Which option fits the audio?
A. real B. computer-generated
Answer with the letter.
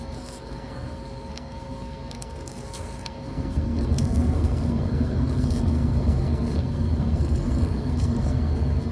B